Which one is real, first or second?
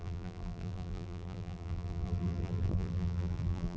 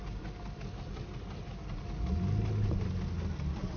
second